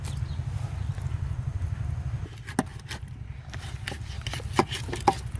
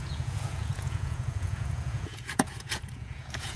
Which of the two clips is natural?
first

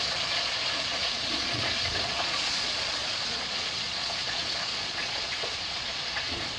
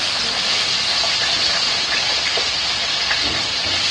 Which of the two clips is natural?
second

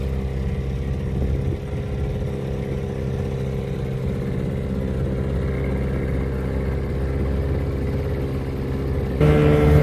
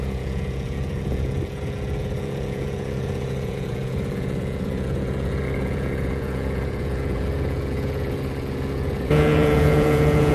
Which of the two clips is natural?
first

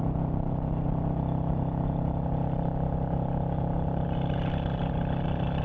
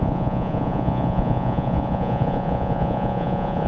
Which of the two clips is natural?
first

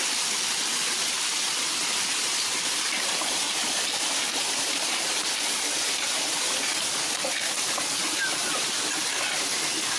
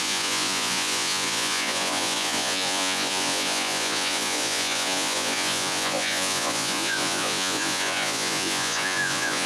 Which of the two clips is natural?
first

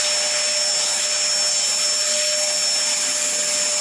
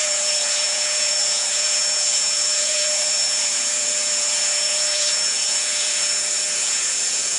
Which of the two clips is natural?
first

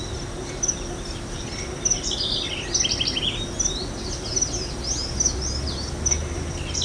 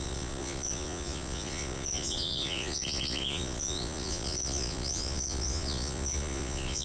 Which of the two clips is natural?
first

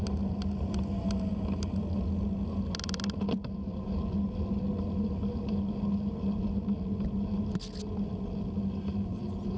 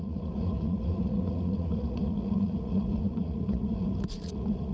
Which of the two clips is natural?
first